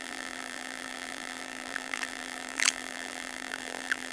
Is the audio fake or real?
fake